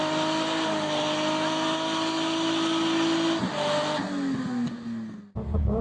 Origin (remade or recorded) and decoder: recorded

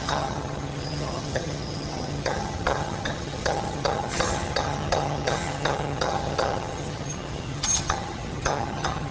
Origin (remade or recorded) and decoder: remade, vocoder, HiFi-GAN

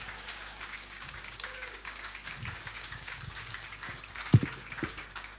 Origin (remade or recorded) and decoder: remade, codec, DAC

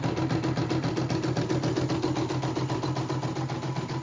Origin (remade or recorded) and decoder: recorded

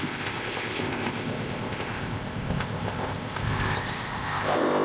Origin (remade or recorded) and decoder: remade, codec, ZipCodec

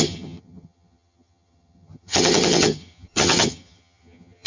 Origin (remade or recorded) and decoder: remade, vocoder, HiFi-GAN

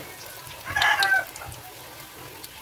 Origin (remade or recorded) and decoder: recorded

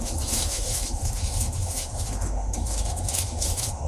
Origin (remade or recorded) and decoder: remade, autoencoder, DAC-VAE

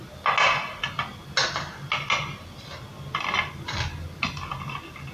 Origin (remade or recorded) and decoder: recorded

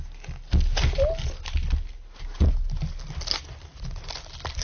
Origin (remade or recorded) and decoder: recorded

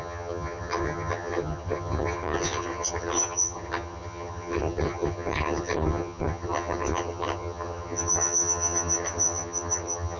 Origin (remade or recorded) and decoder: remade, vocoder, HiFi-GAN